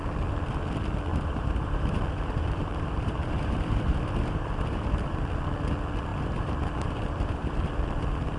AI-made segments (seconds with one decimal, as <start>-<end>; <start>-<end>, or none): 1.1-5.2; 6.1-7.6